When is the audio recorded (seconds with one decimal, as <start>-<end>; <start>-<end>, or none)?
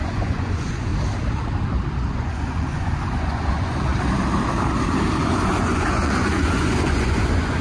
0.9-2.1; 3.9-5.2